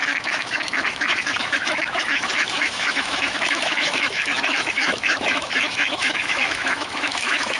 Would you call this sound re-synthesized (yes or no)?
yes